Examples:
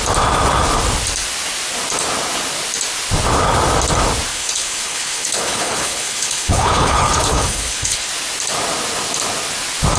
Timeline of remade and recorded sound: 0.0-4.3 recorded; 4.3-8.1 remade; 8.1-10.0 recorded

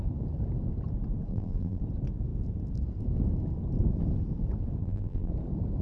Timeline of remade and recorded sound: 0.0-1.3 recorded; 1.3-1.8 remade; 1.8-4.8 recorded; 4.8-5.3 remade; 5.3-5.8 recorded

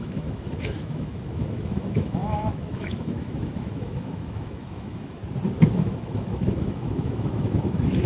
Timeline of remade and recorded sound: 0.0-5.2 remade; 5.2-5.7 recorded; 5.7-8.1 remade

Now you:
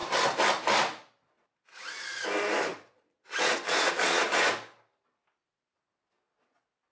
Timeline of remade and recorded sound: 0.0-2.7 recorded; 2.7-4.5 remade; 4.5-6.9 recorded